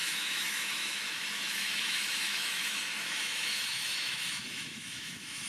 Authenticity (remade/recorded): remade